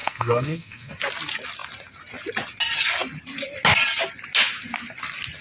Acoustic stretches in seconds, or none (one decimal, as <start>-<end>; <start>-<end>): 0.9-5.4